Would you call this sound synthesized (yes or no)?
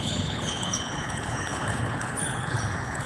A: yes